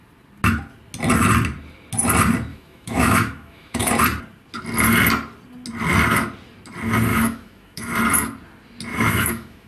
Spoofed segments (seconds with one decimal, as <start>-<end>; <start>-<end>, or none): 2.5-3.9; 7.1-8.0; 8.9-9.7